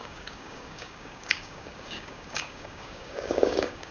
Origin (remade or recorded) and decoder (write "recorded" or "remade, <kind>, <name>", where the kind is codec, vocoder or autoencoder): remade, codec, DAC